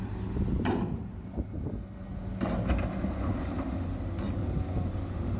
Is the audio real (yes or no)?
yes